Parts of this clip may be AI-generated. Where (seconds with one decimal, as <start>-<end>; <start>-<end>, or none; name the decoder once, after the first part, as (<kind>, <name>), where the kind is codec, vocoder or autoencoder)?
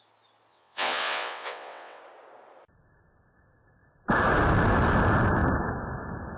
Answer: 0.5-2.0 (vocoder, WaveNeXt)